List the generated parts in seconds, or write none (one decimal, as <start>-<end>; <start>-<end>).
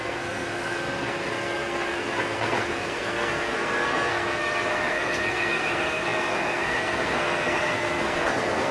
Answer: 0.0-8.7